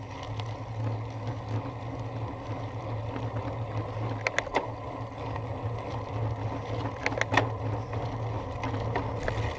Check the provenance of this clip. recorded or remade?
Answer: recorded